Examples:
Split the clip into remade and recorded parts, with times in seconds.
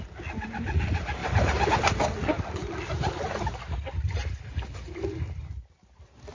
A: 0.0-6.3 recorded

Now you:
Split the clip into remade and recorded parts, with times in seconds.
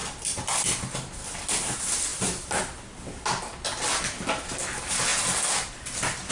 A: 0.0-1.4 remade; 1.4-2.1 recorded; 2.1-2.6 remade; 2.6-6.3 recorded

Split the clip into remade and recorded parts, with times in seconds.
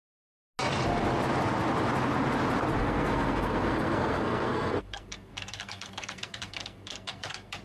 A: 0.0-2.8 recorded; 2.8-7.6 remade